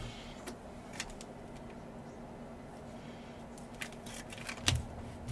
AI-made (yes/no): no